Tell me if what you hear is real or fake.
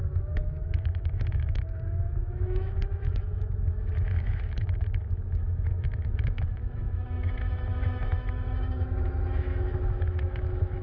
fake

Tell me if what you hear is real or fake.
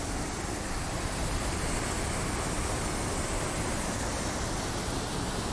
real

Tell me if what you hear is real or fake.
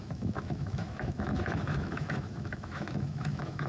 fake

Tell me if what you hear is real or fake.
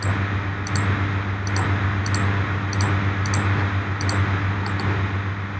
real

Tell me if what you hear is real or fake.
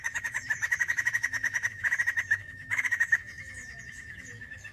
fake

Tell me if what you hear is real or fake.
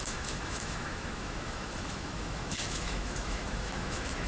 fake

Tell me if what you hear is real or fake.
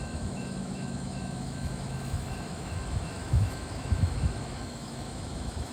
fake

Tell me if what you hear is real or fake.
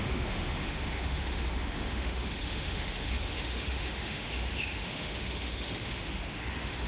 fake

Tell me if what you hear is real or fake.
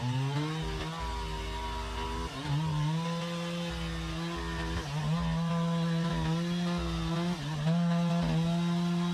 real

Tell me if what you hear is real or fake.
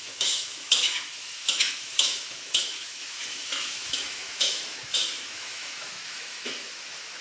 fake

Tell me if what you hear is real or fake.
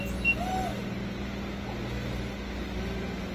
real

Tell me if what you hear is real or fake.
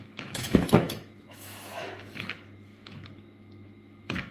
fake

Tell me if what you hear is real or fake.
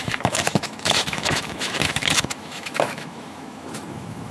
fake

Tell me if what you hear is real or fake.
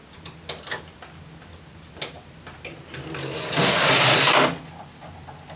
real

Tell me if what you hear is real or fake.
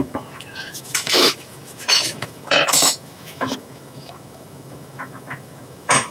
fake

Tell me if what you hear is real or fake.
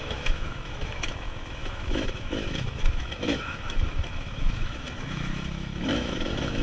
fake